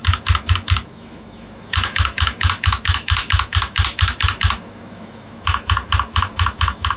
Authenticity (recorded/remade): remade